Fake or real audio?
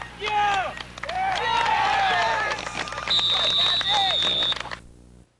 real